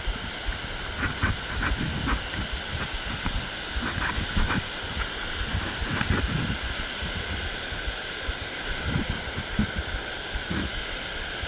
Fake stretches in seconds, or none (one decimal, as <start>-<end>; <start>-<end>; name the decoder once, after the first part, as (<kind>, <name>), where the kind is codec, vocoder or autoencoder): none